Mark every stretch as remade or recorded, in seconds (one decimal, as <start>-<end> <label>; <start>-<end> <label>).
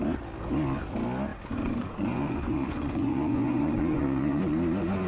0.0-1.3 recorded; 1.3-4.4 remade; 4.4-5.1 recorded